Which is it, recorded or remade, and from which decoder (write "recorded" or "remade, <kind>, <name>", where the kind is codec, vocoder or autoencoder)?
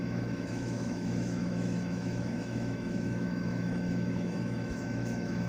remade, autoencoder, DAC-VAE